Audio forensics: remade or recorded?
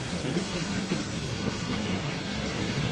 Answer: remade